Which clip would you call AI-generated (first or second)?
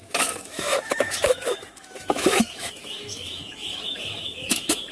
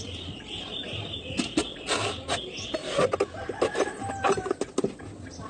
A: first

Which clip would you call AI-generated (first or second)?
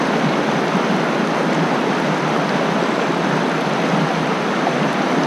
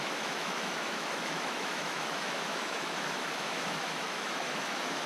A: second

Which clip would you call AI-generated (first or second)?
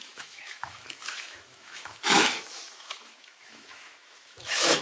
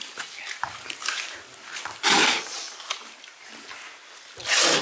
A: first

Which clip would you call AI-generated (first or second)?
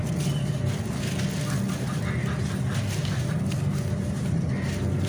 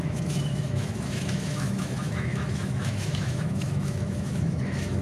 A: second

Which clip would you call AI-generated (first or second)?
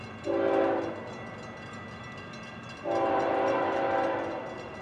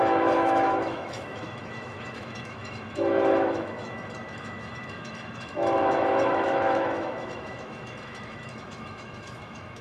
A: second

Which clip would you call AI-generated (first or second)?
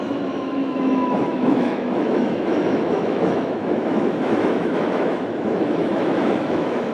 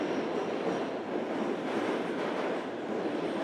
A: first